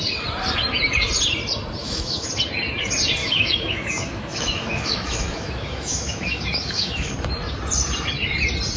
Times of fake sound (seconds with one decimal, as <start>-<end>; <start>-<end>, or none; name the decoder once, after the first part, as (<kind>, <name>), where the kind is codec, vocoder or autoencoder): 1.8-2.3 (autoencoder, DAC-VAE); 3.2-7.1